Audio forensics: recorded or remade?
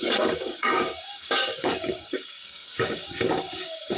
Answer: remade